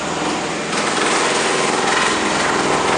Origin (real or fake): real